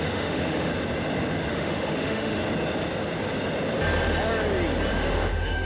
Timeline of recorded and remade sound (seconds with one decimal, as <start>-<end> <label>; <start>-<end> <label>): 0.0-0.7 remade; 0.7-1.5 recorded; 1.5-2.4 remade; 2.4-4.9 recorded; 4.9-5.7 remade